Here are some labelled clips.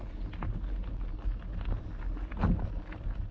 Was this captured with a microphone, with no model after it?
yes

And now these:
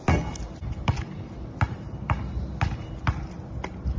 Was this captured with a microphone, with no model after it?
yes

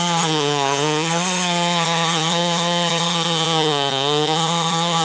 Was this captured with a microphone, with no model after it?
no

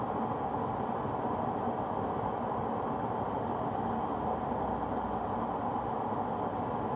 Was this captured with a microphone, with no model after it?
yes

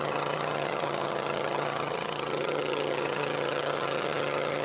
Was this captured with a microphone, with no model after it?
no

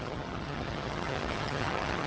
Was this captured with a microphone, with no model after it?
no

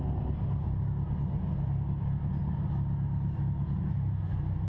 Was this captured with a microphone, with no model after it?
yes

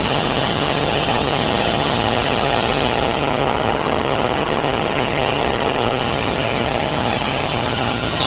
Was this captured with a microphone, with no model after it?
no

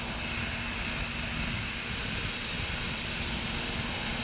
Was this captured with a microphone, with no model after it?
yes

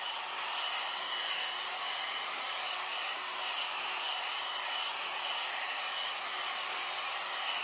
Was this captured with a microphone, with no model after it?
yes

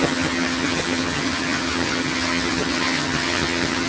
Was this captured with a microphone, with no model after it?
no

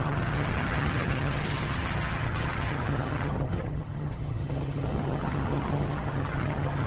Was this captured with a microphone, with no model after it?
no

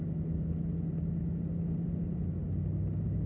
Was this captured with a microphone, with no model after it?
yes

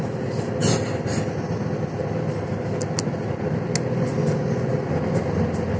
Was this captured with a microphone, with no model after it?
yes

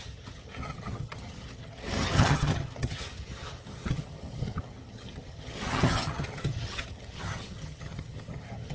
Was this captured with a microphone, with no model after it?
no